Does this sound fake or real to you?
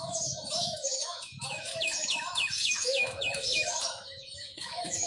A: fake